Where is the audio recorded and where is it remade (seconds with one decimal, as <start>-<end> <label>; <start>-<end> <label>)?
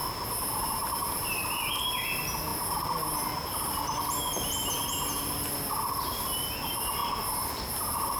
0.0-8.2 recorded